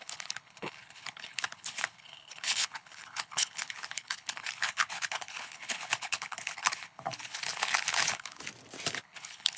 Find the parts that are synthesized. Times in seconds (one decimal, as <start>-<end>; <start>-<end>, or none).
0.0-8.4; 9.0-9.6